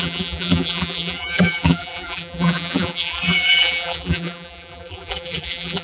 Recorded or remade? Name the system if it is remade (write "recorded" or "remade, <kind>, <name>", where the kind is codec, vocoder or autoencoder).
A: remade, vocoder, BigVGAN v2